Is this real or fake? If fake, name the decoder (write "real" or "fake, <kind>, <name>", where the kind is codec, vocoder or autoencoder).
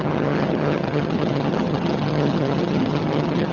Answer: fake, vocoder, HiFi-GAN